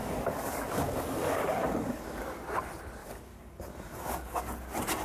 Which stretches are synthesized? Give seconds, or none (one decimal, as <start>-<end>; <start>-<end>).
0.0-2.2; 3.0-4.4